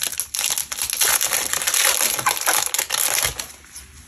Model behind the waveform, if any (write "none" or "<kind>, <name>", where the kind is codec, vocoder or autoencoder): none